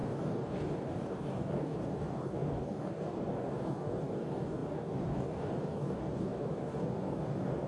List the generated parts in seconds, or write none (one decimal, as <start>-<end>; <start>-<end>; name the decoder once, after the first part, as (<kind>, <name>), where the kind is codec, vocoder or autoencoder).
0.0-7.7 (codec, DAC)